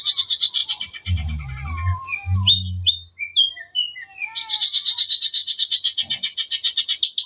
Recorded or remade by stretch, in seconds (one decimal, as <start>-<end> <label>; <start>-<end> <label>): 0.0-7.3 recorded